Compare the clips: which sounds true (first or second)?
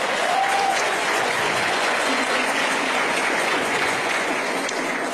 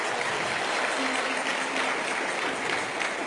second